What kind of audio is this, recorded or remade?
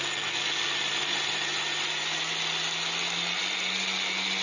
recorded